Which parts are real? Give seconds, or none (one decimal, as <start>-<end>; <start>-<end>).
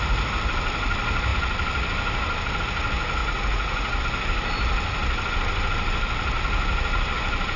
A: 0.0-3.2; 4.0-7.6